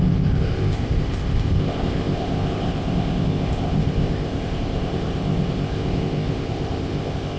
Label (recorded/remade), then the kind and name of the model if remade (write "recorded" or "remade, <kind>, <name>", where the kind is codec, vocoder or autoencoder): remade, codec, ZipCodec